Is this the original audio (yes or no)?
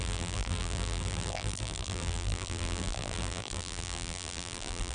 no